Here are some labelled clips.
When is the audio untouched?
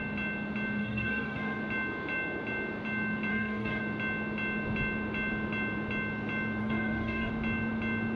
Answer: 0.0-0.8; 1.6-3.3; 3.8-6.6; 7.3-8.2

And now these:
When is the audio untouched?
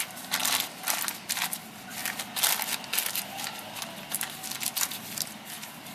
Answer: 0.4-1.6; 2.0-4.8